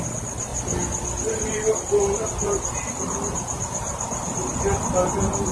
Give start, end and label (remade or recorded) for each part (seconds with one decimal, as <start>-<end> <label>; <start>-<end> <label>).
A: 0.0-0.5 remade; 0.5-1.3 recorded; 1.3-5.5 remade